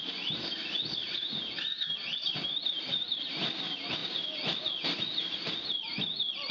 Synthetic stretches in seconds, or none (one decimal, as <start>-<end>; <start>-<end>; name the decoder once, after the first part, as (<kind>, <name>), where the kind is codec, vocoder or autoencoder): none